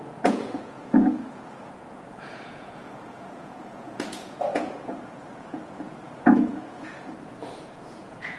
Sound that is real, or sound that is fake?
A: fake